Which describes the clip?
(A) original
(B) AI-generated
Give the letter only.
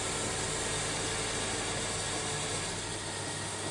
A